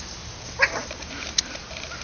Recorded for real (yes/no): yes